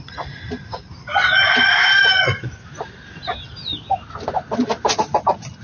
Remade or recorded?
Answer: recorded